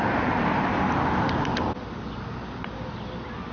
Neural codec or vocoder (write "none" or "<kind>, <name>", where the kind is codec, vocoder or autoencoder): none